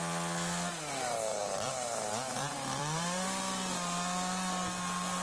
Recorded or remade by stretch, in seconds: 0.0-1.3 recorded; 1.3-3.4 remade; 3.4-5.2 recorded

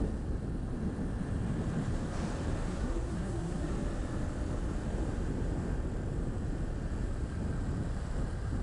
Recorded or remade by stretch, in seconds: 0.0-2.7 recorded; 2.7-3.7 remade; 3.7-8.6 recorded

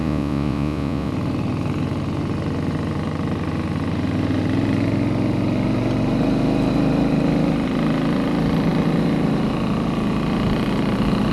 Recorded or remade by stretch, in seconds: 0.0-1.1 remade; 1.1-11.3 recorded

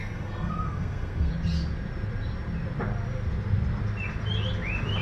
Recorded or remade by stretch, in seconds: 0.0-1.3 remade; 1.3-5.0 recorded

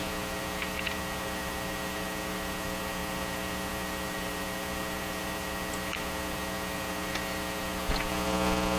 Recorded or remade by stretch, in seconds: 0.0-8.8 remade

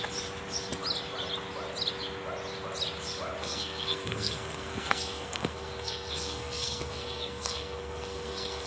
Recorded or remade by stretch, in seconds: 0.0-3.4 recorded; 3.4-8.7 remade

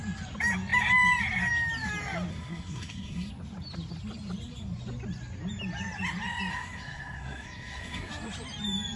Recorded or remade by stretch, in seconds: 0.0-2.3 recorded; 2.3-3.3 remade; 3.3-6.5 recorded; 6.5-8.1 remade; 8.1-9.0 recorded

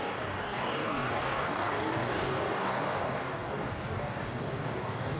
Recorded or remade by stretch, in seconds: 0.0-5.2 remade